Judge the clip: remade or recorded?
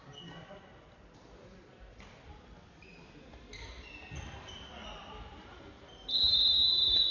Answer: recorded